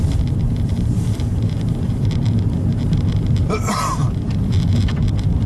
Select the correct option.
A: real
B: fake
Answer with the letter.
B